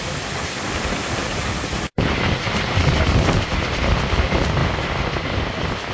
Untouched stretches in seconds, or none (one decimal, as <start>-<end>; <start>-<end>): 0.0-5.9